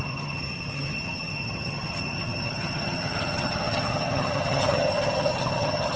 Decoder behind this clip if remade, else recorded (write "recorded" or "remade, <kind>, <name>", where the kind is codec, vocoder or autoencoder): remade, vocoder, HiFi-GAN